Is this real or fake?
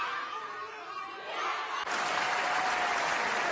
real